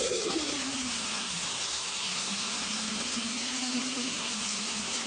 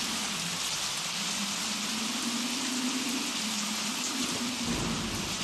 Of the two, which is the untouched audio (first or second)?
second